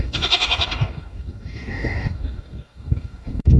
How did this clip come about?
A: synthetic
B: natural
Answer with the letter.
A